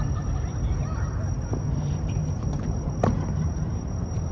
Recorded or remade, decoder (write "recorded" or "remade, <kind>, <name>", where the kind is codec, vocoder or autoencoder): remade, vocoder, BigVGAN v2